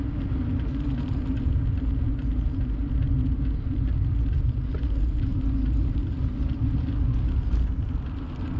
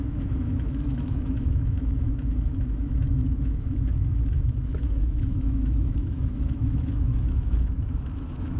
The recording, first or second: first